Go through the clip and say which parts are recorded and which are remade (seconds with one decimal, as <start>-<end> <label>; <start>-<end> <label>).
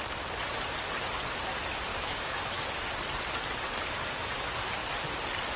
0.0-1.9 recorded; 1.9-2.8 remade; 2.8-5.6 recorded